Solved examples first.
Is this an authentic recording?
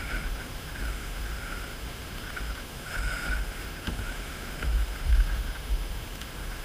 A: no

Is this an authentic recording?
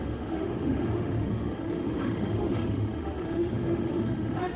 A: no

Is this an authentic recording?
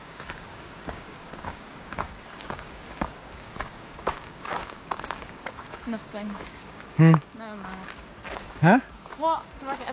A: no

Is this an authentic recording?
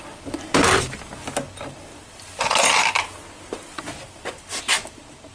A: yes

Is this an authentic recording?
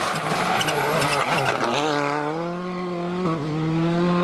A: yes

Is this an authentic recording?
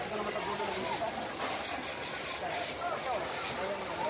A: yes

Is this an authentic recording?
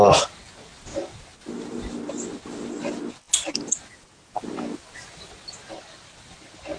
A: yes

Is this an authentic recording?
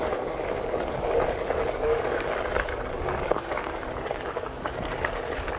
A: no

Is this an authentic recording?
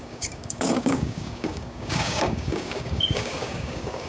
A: no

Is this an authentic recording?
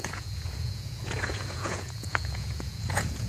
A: no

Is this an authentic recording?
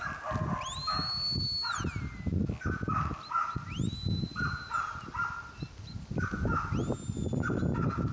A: yes